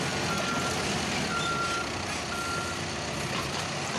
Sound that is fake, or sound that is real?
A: real